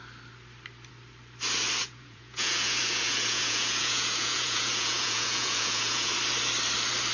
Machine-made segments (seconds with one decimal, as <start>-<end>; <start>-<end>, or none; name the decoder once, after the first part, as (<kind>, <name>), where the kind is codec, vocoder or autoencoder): 1.8-6.1 (vocoder, Vocos)